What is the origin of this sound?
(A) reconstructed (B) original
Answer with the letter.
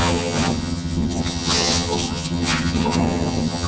A